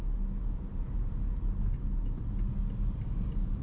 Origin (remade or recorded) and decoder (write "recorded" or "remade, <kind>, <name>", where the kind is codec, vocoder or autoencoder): recorded